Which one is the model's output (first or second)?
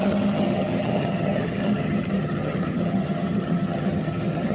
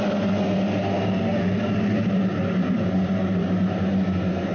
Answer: first